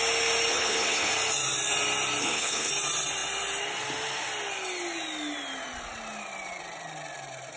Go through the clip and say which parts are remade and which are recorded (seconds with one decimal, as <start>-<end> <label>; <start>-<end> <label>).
0.0-0.5 recorded; 0.5-1.1 remade; 1.1-2.2 recorded; 2.2-2.7 remade; 2.7-7.6 recorded